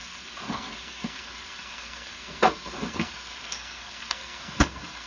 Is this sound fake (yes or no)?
yes